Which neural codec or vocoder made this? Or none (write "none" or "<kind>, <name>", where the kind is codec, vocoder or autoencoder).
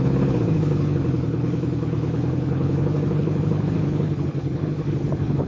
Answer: codec, HILCodec